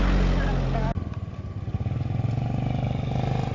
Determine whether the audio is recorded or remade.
recorded